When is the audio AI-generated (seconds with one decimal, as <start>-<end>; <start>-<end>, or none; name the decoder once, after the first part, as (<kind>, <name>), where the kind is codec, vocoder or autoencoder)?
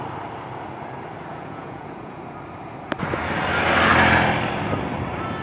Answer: 1.3-2.2 (vocoder, Vocos)